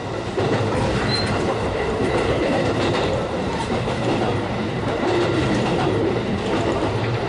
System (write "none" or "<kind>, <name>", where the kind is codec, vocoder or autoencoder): vocoder, BigVGAN v2